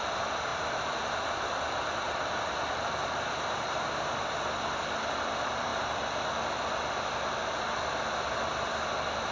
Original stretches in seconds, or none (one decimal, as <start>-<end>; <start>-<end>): none